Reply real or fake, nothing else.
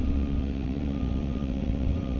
fake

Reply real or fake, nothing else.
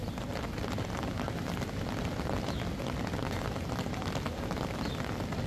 real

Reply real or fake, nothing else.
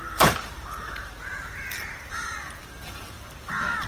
fake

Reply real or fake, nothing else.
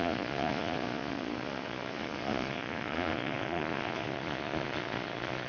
fake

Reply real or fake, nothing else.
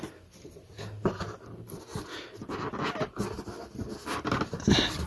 real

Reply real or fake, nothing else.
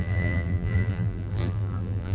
fake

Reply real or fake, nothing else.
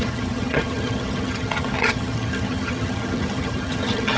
fake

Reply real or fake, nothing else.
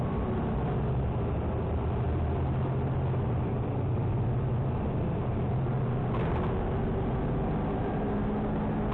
real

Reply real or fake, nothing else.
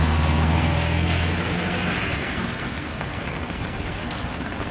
fake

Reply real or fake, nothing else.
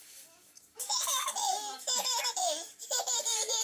fake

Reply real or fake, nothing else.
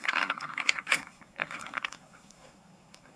fake